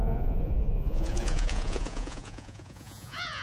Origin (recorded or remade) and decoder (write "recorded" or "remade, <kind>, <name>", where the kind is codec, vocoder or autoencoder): remade, vocoder, Vocos